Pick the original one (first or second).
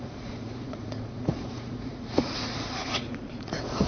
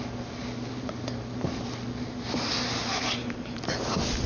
second